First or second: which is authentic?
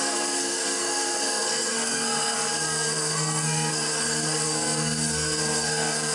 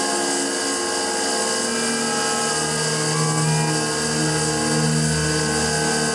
second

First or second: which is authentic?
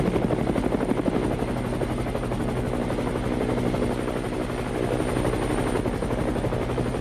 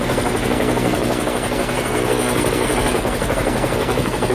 first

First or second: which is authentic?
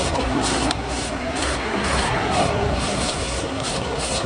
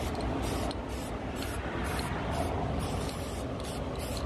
second